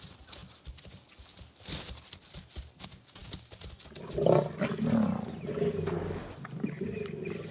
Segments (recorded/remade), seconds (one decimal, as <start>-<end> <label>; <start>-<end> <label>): 0.0-7.5 recorded